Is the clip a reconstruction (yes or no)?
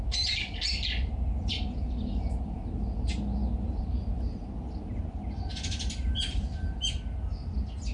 no